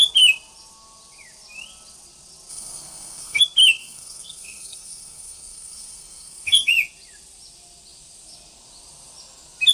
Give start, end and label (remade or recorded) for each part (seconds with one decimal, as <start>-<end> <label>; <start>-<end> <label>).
0.0-2.5 recorded; 2.5-3.4 remade; 3.4-3.8 recorded; 3.8-6.7 remade; 6.7-9.7 recorded